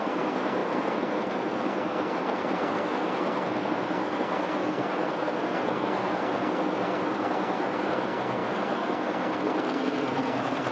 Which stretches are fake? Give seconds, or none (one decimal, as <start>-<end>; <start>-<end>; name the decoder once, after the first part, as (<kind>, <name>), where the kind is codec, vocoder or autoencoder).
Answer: 0.0-10.7 (codec, SNAC)